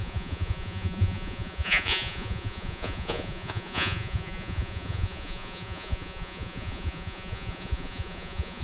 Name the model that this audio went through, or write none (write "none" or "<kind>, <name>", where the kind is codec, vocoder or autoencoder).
vocoder, Vocos